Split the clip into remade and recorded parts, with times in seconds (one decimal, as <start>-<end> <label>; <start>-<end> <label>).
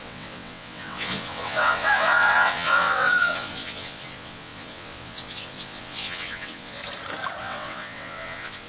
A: 0.0-6.8 remade; 6.8-7.4 recorded; 7.4-8.7 remade